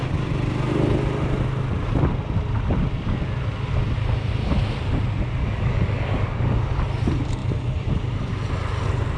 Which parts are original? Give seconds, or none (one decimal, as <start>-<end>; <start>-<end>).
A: 0.0-5.4; 6.6-9.2

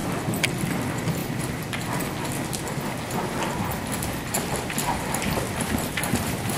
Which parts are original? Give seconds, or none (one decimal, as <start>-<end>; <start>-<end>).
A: 0.0-6.6

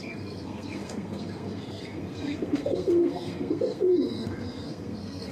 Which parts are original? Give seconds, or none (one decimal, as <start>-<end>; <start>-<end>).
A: none

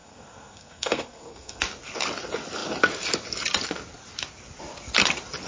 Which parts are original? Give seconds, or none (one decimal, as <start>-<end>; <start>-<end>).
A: 1.6-5.5